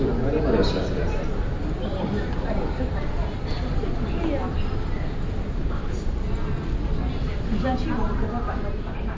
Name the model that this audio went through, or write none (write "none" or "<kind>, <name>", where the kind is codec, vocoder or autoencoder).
none